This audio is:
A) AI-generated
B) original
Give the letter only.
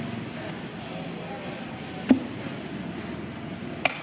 B